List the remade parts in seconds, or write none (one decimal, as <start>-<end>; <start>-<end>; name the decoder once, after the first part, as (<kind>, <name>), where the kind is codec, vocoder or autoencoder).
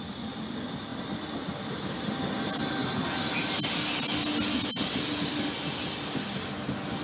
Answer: none